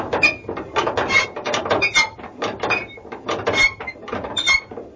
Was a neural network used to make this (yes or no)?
no